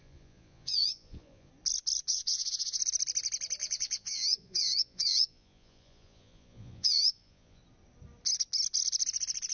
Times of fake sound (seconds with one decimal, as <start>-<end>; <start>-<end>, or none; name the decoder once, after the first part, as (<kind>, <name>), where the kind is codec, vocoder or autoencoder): 0.0-1.5 (vocoder, Vocos); 2.1-2.8; 3.6-7.6